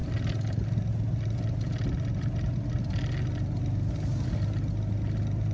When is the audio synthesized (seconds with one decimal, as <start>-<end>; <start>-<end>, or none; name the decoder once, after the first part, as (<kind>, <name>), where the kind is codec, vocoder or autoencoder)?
none